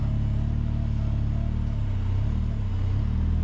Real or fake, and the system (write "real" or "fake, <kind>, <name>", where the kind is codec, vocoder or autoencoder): real